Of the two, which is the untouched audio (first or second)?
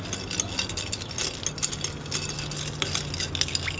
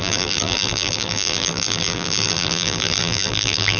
first